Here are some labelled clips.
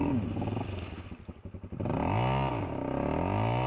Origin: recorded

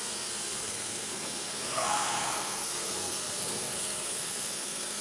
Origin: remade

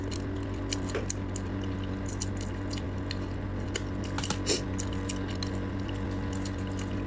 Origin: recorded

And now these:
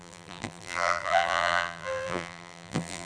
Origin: remade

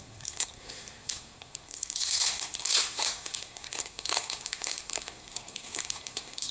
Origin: remade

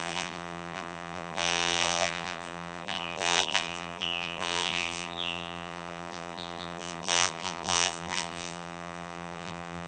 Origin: remade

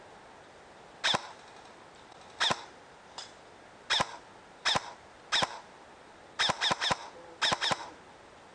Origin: recorded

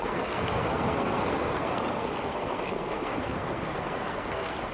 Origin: remade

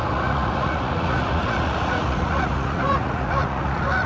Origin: remade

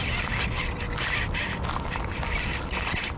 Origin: recorded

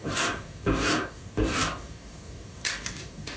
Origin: remade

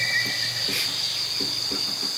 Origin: recorded